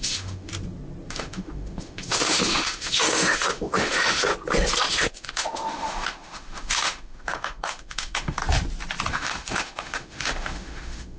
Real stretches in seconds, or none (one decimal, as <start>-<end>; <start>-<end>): 0.5-1.1; 4.3-4.9; 8.4-9.1